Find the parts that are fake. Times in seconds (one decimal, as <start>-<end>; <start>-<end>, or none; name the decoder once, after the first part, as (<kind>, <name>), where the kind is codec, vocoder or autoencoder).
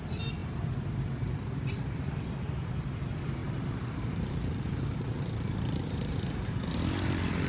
3.4-6.6 (vocoder, BigVGAN v2)